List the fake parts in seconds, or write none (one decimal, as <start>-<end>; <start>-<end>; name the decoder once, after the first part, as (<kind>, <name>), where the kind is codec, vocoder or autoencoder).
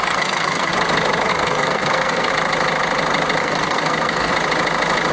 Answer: 0.0-0.7 (codec, SNAC); 1.3-2.3; 3.4-4.3